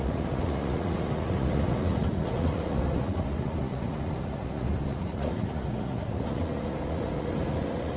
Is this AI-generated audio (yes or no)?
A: yes